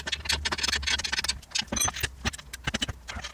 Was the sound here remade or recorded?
recorded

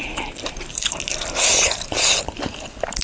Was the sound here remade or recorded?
remade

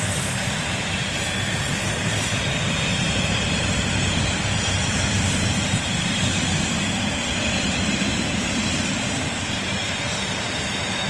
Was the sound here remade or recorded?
remade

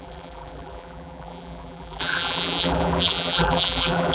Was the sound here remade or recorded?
remade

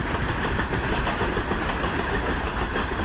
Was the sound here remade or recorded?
remade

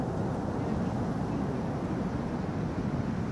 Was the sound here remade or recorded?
recorded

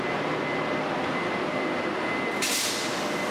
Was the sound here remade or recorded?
remade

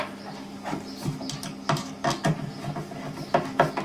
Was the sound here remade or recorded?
recorded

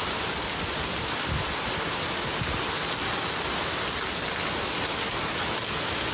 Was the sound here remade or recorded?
recorded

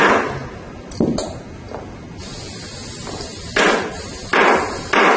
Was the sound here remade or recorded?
recorded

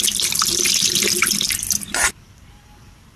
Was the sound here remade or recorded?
recorded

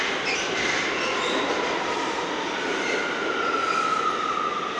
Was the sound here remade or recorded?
recorded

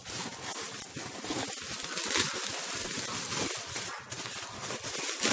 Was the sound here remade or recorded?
recorded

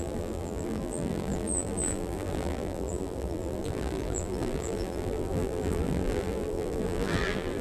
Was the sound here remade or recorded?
remade